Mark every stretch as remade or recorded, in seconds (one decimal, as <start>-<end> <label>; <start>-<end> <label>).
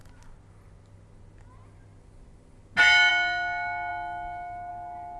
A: 0.0-5.2 recorded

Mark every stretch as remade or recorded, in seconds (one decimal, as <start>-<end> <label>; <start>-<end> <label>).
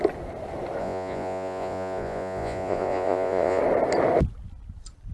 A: 0.0-0.8 recorded; 0.8-3.6 remade; 3.6-5.1 recorded